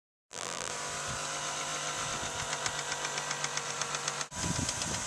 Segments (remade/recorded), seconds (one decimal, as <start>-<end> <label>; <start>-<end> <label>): 0.0-0.7 remade; 0.7-5.1 recorded